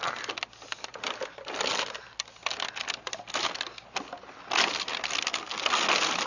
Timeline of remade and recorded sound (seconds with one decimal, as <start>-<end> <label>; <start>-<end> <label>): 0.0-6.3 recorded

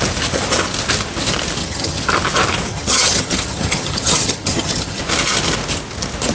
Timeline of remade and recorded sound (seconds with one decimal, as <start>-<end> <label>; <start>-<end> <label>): 0.0-1.6 recorded; 1.6-2.1 remade; 2.1-2.7 recorded; 2.7-5.0 remade; 5.0-6.3 recorded

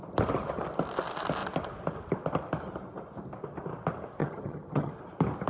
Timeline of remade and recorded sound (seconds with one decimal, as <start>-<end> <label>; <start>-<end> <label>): 0.0-4.2 recorded; 4.2-4.9 remade; 4.9-5.5 recorded